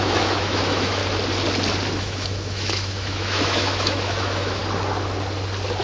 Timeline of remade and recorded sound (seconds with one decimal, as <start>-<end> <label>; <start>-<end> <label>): 0.0-1.0 remade; 1.0-2.0 recorded; 2.0-4.6 remade; 4.6-5.8 recorded